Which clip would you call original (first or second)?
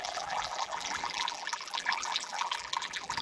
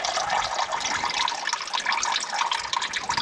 second